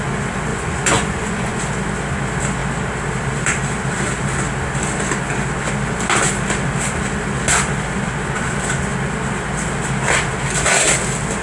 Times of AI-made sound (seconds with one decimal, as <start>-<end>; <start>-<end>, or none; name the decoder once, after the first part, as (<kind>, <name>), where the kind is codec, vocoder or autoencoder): 0.5-1.6 (vocoder, Vocos)